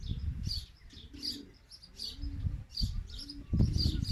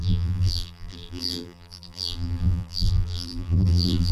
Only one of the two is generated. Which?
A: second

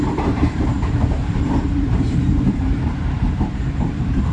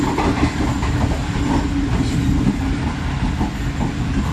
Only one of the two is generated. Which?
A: first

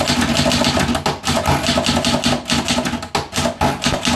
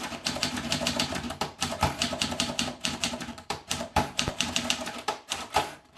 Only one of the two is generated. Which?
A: second